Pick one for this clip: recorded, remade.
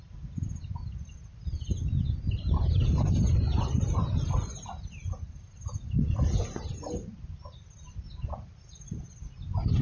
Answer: recorded